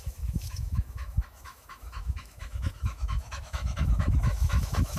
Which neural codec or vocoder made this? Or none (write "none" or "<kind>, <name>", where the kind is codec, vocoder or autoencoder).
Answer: autoencoder, DAC-VAE